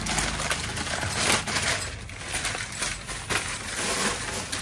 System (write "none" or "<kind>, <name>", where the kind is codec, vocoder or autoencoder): none